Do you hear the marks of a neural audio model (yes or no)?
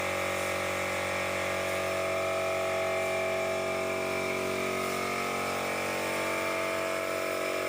no